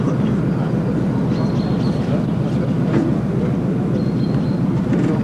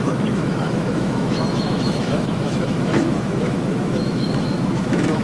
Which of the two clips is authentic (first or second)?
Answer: first